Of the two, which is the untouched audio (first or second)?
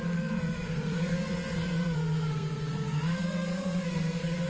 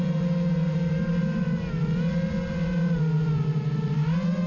second